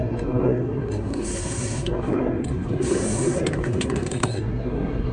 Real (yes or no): no